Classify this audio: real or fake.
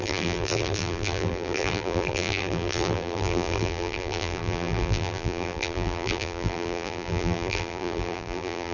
fake